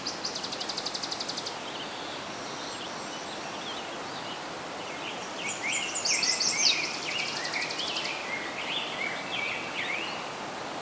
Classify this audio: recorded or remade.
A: recorded